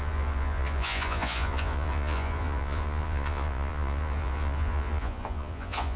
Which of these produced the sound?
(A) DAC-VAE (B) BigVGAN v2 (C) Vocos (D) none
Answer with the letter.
C